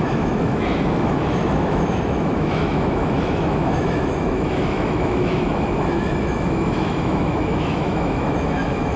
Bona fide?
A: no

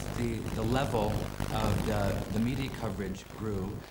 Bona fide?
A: yes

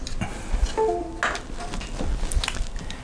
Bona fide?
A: yes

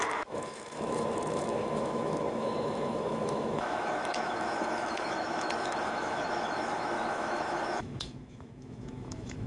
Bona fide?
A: no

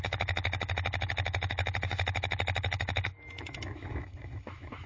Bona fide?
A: no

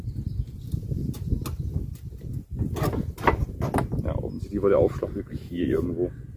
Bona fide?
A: yes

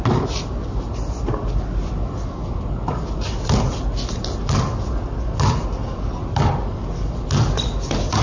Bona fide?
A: yes